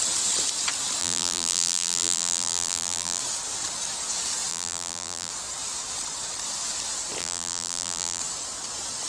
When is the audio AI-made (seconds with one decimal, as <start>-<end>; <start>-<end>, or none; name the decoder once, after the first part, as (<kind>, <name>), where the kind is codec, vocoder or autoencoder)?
1.0-3.2 (vocoder, BigVGAN v2); 4.5-5.3; 7.2-8.2